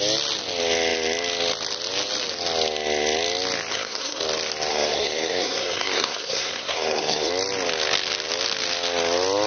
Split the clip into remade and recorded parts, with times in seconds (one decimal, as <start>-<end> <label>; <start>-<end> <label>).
0.0-3.7 recorded; 3.7-4.2 remade; 4.2-4.7 recorded; 4.7-7.3 remade; 7.3-9.5 recorded